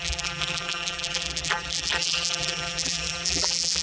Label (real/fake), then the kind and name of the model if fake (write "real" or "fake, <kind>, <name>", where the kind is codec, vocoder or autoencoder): fake, vocoder, BigVGAN v2